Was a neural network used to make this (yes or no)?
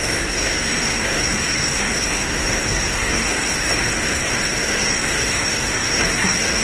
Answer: yes